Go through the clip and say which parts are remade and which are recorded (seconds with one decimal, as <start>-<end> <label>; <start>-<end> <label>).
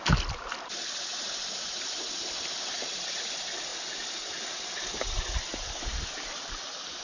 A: 0.0-7.0 recorded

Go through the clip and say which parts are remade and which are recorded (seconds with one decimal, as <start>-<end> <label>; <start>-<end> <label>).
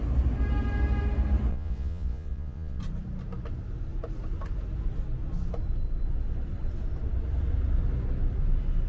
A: 0.0-1.5 recorded; 1.5-2.8 remade; 2.8-8.9 recorded